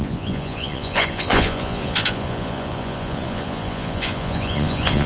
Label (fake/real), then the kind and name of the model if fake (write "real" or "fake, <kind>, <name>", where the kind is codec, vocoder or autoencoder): fake, vocoder, Vocos